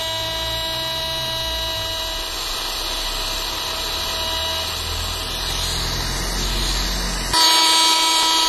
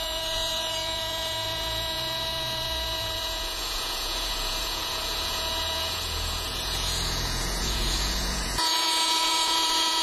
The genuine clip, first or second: first